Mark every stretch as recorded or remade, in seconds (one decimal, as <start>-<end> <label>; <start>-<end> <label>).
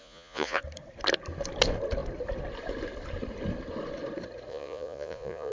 0.0-0.6 remade; 0.6-4.5 recorded; 4.5-5.5 remade